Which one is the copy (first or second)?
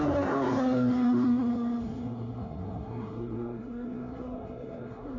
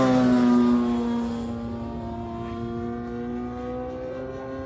first